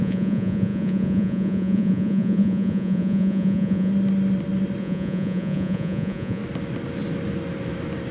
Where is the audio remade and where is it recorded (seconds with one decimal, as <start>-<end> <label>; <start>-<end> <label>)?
0.0-3.9 remade; 3.9-4.8 recorded; 4.8-6.4 remade; 6.4-8.1 recorded

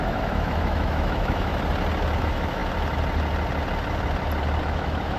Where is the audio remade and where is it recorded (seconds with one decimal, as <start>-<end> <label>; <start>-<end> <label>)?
0.0-1.5 remade; 1.5-2.2 recorded; 2.2-2.6 remade; 2.6-4.6 recorded; 4.6-5.2 remade